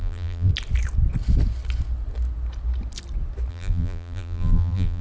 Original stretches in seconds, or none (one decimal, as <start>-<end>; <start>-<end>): 0.5-3.5